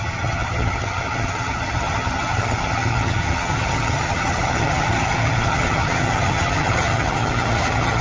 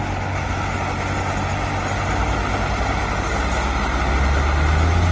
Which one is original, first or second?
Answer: second